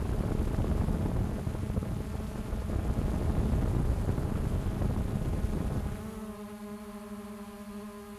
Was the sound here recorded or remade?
recorded